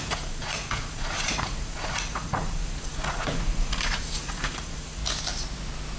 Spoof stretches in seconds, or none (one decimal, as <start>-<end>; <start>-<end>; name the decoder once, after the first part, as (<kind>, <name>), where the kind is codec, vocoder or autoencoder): 0.0-5.0 (vocoder, Vocos)